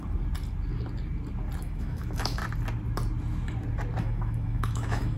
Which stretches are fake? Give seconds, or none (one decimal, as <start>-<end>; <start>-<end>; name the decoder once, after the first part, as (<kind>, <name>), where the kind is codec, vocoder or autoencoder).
1.6-2.4 (autoencoder, DAC-VAE); 4.0-5.2